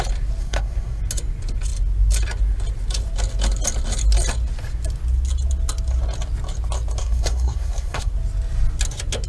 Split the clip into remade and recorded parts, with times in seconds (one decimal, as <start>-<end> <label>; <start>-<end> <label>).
0.0-0.4 recorded; 0.4-1.0 remade; 1.0-7.0 recorded; 7.0-8.1 remade; 8.1-9.3 recorded